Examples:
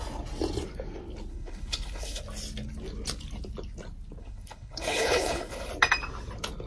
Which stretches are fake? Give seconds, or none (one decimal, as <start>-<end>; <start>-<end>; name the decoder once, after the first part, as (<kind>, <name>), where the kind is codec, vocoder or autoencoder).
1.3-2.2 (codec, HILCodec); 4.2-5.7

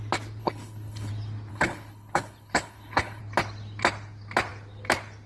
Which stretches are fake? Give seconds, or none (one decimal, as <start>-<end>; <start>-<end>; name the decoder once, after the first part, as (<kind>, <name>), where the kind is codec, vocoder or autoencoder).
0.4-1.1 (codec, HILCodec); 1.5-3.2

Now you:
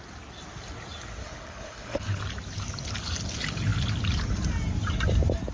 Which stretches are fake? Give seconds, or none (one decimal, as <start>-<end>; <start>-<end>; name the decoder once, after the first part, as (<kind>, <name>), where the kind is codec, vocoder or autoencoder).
1.2-2.2 (codec, HILCodec)

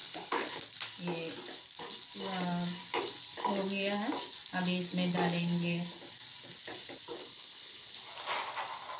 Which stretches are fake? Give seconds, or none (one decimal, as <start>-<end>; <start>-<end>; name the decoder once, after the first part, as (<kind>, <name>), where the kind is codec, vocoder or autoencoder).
0.0-0.6 (codec, HILCodec); 7.2-7.9

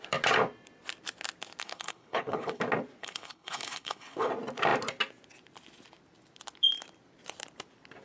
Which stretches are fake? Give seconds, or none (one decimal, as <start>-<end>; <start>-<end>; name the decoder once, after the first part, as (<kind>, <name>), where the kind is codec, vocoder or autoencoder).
1.6-2.6 (codec, HILCodec); 3.0-4.3

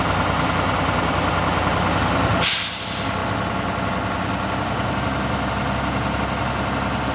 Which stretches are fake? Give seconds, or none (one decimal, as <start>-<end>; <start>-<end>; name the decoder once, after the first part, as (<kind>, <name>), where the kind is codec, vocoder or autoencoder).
none

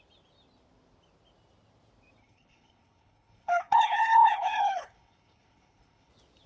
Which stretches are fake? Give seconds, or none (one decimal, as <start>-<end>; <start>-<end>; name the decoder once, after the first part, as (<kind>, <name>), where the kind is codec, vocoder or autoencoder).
2.2-6.1 (codec, HILCodec)

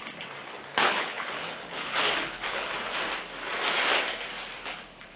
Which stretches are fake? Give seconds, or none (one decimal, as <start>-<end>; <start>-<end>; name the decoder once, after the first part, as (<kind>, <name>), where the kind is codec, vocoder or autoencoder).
0.7-2.7 (codec, HILCodec); 4.6-5.2